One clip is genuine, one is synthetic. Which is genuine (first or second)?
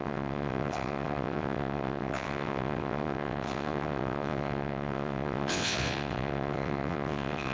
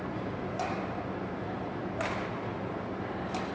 second